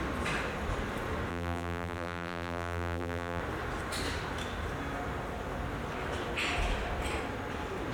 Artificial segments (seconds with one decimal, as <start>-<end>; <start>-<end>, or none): 1.3-3.4